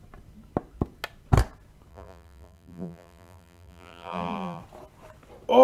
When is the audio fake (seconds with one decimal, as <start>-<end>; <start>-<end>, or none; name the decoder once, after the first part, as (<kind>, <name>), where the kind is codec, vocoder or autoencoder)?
1.9-4.6 (vocoder, BigVGAN v2)